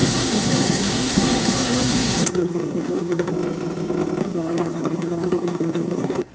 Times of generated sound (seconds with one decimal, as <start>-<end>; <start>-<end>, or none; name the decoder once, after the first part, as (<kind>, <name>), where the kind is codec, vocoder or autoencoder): 0.0-3.3 (codec, SNAC); 4.2-6.3